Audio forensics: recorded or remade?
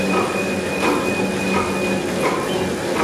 recorded